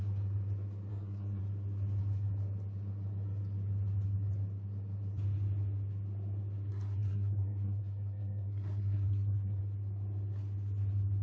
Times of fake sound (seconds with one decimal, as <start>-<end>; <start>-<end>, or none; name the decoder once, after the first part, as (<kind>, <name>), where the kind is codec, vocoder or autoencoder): 0.9-1.4 (codec, SNAC); 6.7-9.6